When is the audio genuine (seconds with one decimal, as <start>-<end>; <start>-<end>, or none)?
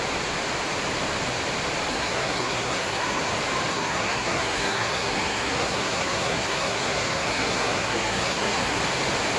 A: 0.0-1.9; 3.3-3.7; 8.8-9.4